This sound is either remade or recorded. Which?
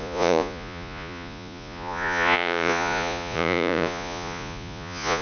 remade